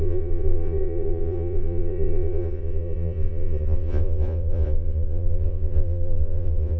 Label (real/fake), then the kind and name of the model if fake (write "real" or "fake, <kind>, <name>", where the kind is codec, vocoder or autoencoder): fake, vocoder, Vocos